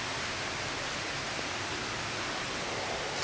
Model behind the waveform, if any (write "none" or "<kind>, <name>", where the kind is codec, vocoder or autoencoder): none